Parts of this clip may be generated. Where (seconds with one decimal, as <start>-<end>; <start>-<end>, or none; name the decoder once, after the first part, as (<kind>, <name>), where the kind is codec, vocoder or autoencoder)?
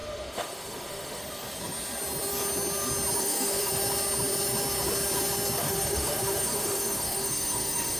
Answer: 0.0-1.2 (autoencoder, DAC-VAE); 3.2-3.8; 5.6-8.0